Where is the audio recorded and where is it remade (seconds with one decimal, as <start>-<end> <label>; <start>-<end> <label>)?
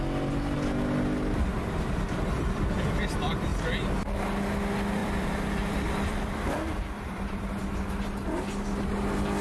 0.0-5.0 recorded; 5.0-7.9 remade; 7.9-9.4 recorded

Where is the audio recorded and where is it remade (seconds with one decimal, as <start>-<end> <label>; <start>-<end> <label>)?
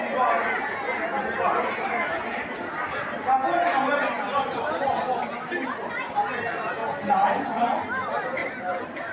0.0-8.4 recorded; 8.4-9.1 remade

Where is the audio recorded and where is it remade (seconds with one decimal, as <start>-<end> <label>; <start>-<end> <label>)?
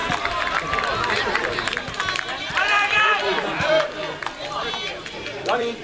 0.0-2.3 recorded; 2.3-5.8 remade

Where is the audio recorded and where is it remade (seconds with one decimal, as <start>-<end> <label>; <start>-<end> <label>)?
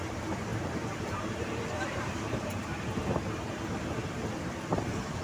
0.0-0.5 recorded; 0.5-3.6 remade; 3.6-5.2 recorded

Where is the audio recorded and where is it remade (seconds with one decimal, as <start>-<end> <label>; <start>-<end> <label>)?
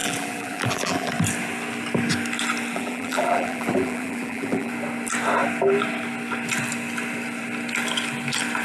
0.0-1.1 remade; 1.1-2.7 recorded; 2.7-4.7 remade; 4.7-8.6 recorded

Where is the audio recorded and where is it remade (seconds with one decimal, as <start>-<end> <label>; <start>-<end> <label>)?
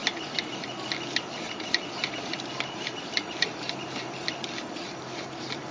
0.0-5.7 remade